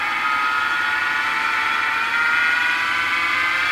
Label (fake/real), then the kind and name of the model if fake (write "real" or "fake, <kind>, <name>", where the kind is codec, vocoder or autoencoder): real